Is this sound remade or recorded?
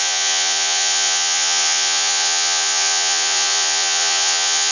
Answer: remade